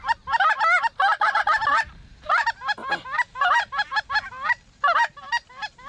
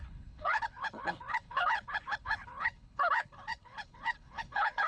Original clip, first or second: first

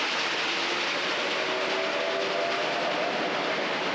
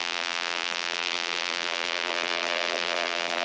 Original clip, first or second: first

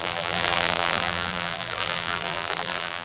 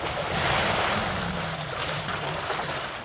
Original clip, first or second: second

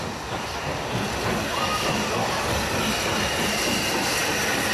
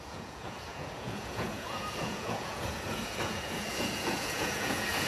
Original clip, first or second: first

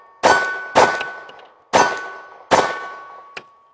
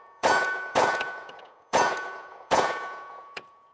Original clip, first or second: first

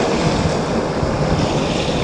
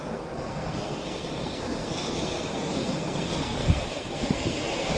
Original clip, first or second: first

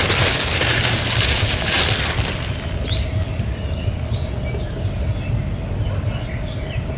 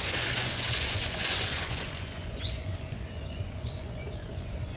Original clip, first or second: first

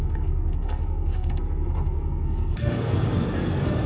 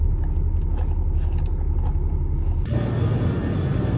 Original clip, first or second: second